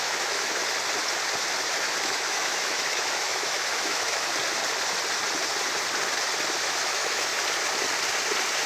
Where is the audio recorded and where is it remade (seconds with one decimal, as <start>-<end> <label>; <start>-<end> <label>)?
0.0-0.6 remade; 0.6-1.7 recorded; 1.7-4.3 remade; 4.3-6.6 recorded; 6.6-7.3 remade; 7.3-8.7 recorded